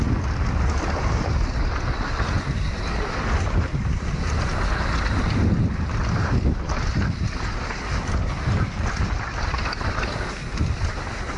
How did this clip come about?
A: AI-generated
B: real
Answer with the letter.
A